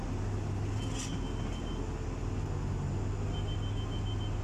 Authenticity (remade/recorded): recorded